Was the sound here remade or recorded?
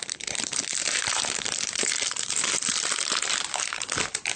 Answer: remade